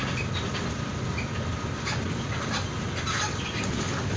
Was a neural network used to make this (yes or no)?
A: no